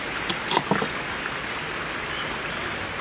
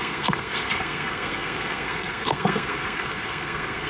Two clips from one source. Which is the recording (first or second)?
first